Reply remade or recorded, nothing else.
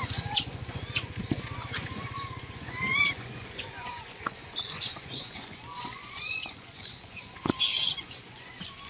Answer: remade